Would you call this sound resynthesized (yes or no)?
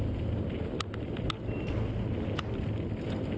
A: no